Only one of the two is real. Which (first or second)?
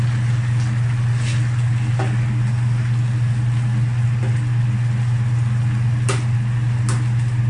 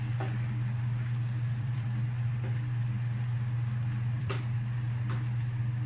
first